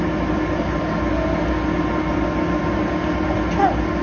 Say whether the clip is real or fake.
real